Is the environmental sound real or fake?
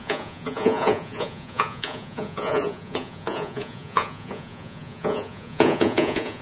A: fake